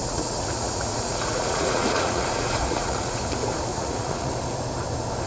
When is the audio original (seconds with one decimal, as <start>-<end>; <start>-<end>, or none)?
3.2-3.7; 4.3-5.3